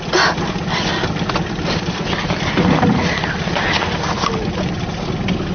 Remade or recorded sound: recorded